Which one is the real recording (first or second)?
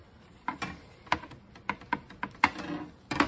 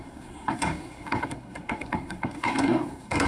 first